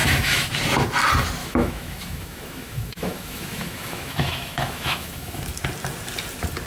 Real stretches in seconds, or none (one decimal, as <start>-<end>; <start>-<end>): 0.5-1.4; 5.4-6.7